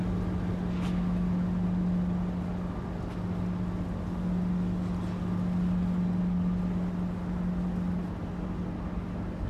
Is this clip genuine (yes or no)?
yes